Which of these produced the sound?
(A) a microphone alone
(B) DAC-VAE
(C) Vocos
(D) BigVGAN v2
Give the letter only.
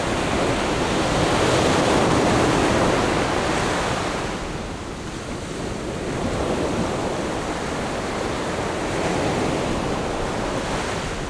A